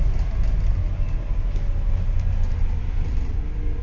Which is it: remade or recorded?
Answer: recorded